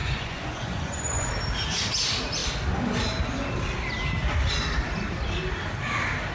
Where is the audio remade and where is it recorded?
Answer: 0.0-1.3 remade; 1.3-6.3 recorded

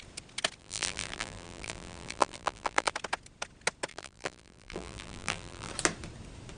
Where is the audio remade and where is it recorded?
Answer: 0.0-0.6 recorded; 0.6-2.9 remade; 2.9-3.9 recorded; 3.9-5.7 remade; 5.7-6.6 recorded

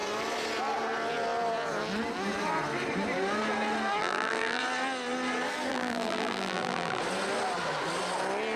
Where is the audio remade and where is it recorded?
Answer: 0.0-4.0 recorded; 4.0-4.6 remade; 4.6-5.7 recorded; 5.7-7.0 remade; 7.0-8.6 recorded

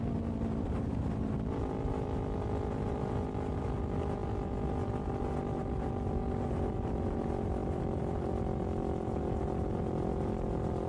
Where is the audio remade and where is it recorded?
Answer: 0.0-10.9 recorded